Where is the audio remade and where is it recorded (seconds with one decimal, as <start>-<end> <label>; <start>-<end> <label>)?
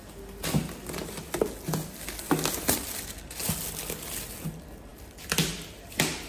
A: 0.0-6.3 recorded